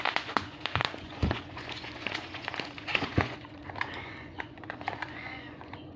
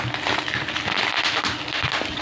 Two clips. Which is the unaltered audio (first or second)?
second